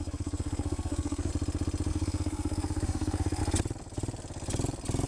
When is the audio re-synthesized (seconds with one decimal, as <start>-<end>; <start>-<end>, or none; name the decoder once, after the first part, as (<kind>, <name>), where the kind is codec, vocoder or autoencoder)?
0.0-1.3 (codec, SNAC); 1.9-3.4